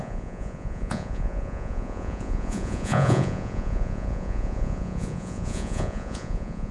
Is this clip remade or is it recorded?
remade